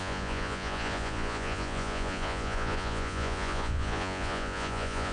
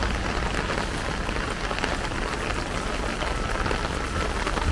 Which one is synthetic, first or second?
first